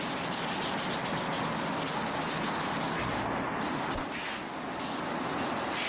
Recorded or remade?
recorded